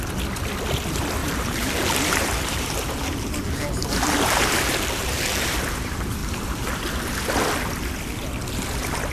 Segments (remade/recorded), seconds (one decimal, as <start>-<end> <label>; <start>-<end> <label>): 0.0-1.2 recorded; 1.2-5.6 remade; 5.6-6.2 recorded; 6.2-6.8 remade; 6.8-9.1 recorded